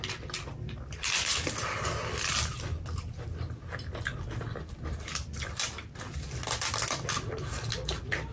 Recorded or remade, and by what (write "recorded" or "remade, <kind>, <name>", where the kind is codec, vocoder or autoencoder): recorded